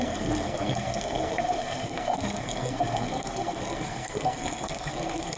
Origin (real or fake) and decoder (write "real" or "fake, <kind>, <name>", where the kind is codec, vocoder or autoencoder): fake, codec, SNAC